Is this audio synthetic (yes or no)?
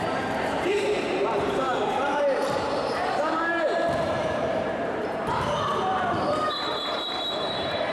yes